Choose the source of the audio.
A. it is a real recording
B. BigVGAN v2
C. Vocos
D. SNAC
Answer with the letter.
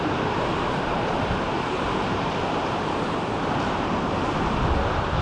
B